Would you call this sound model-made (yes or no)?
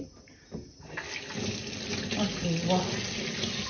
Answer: no